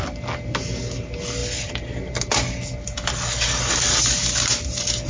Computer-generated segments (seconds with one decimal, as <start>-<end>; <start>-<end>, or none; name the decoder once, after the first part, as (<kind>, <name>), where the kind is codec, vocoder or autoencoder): none